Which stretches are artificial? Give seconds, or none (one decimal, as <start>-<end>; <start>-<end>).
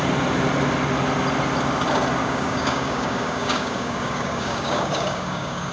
2.2-5.7